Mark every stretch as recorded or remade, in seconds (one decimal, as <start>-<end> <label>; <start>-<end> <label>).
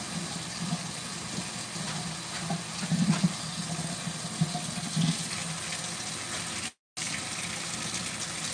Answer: 0.0-8.5 recorded